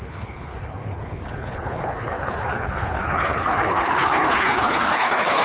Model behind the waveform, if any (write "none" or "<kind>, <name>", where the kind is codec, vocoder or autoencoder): codec, HILCodec